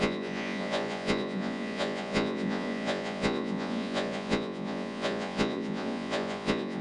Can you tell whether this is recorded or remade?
remade